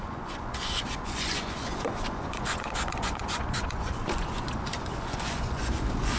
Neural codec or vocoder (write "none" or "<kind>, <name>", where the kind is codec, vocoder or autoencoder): vocoder, Vocos